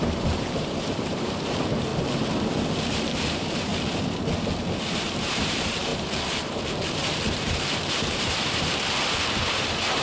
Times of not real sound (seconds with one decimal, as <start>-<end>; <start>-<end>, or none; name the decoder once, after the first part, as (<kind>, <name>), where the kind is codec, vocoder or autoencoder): 0.0-1.9 (vocoder, BigVGAN v2); 3.0-3.7; 4.8-10.0